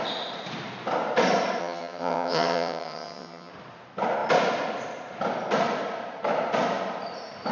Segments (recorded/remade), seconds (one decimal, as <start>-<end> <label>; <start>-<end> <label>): 0.0-1.6 recorded; 1.6-3.5 remade; 3.5-7.5 recorded

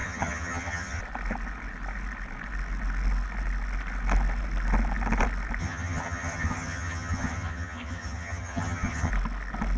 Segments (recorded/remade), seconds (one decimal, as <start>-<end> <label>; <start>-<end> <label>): 0.0-1.0 remade; 1.0-5.6 recorded; 5.6-9.1 remade; 9.1-9.8 recorded

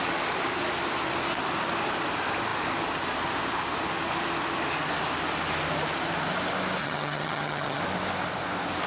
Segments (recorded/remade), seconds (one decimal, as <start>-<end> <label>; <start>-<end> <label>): 0.0-6.8 recorded; 6.8-7.8 remade; 7.8-8.9 recorded

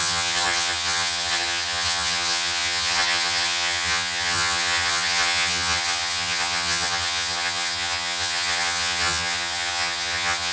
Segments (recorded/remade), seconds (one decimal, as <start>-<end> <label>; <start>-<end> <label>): 0.0-10.5 remade

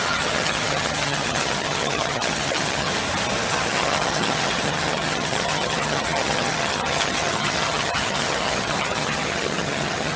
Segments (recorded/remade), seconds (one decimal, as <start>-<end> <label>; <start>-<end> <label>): 0.0-2.9 remade; 2.9-3.5 recorded; 3.5-10.2 remade

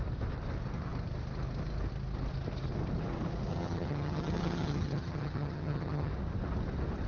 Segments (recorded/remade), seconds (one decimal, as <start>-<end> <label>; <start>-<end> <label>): 0.0-3.5 recorded; 3.5-6.1 remade; 6.1-7.1 recorded